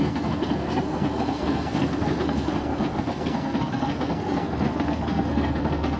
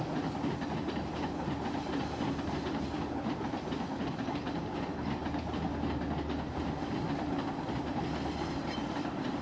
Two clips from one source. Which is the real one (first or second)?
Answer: second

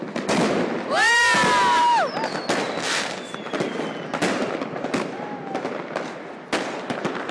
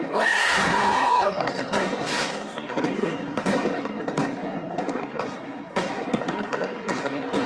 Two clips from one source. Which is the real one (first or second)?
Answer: first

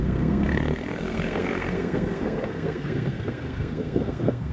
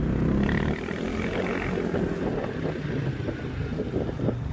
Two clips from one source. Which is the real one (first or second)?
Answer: second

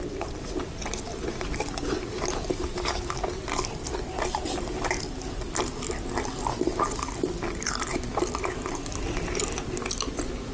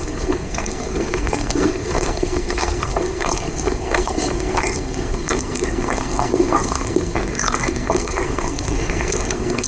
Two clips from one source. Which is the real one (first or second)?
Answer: first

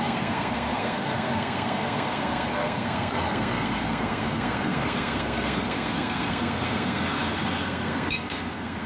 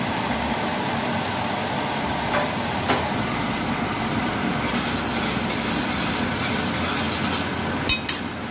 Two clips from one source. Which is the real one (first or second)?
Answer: second